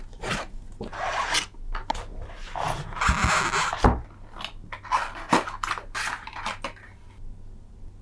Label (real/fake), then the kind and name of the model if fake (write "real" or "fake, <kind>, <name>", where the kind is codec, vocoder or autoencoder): real